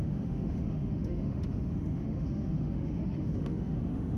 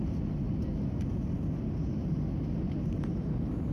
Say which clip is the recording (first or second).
second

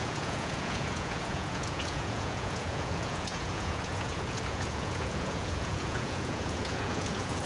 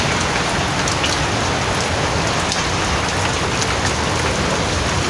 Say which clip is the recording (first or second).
second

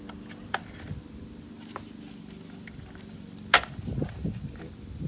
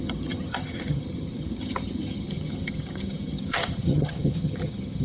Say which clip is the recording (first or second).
first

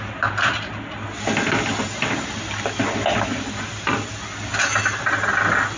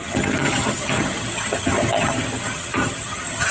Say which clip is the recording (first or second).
first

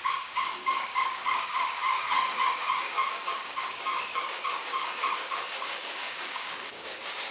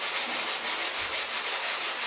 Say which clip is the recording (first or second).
second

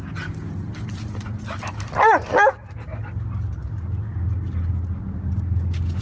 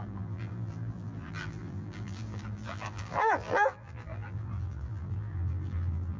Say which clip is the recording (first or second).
first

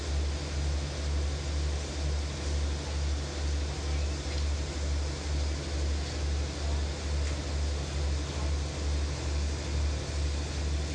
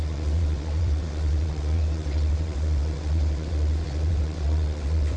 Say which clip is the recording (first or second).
first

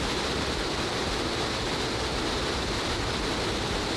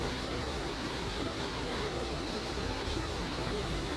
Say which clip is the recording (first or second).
first